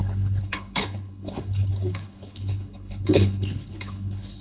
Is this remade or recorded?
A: remade